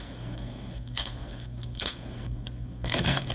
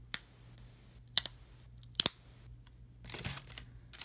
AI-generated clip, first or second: first